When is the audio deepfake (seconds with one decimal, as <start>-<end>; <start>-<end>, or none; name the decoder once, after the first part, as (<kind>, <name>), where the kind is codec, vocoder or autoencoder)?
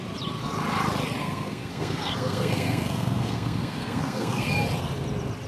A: 1.2-4.5 (codec, SNAC)